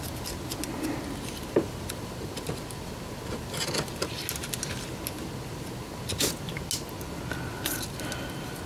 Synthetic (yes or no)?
no